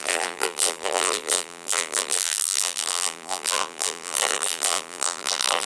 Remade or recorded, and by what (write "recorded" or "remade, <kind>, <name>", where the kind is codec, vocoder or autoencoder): remade, vocoder, BigVGAN v2